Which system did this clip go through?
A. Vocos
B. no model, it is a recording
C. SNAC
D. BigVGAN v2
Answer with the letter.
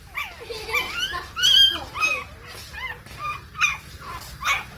B